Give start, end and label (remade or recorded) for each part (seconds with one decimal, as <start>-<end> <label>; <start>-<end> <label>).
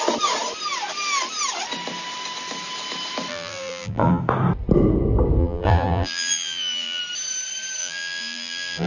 0.0-3.3 recorded; 3.3-4.2 remade; 4.2-5.4 recorded; 5.4-7.0 remade; 7.0-7.8 recorded; 7.8-8.9 remade